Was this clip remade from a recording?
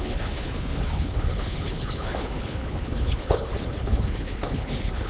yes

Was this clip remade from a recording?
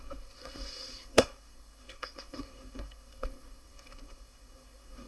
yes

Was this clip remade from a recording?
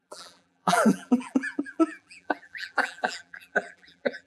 yes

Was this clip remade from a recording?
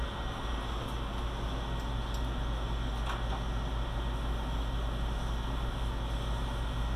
no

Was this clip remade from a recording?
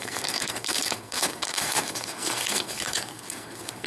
yes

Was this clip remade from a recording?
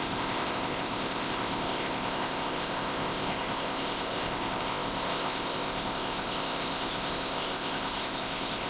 yes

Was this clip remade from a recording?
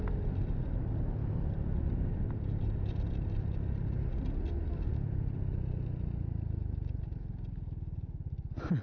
no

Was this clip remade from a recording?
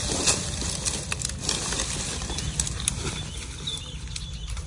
no